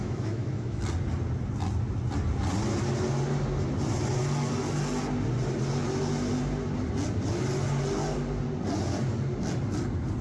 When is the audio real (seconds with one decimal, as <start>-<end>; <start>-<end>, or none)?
0.8-10.2